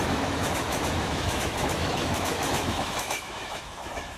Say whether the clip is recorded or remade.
remade